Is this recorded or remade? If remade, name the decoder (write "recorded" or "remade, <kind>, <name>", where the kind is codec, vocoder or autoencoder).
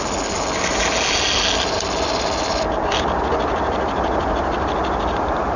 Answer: recorded